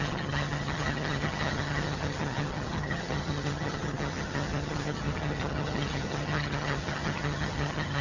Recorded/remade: remade